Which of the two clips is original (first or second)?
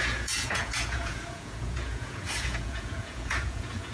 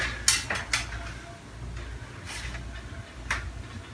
second